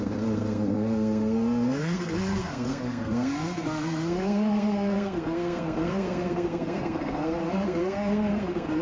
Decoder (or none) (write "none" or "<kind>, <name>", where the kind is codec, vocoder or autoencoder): codec, SNAC